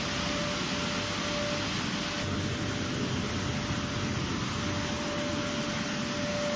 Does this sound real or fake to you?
real